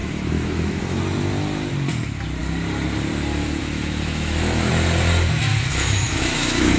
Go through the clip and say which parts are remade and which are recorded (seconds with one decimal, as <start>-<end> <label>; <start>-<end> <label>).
0.0-1.0 remade; 1.0-3.6 recorded; 3.6-4.7 remade; 4.7-5.5 recorded; 5.5-6.8 remade